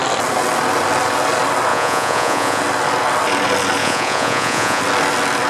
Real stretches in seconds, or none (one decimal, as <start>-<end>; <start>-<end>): 0.0-1.7; 2.6-3.8; 4.8-5.5